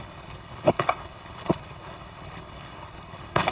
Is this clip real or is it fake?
fake